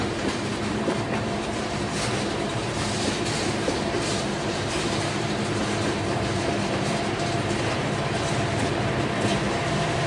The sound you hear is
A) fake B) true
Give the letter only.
A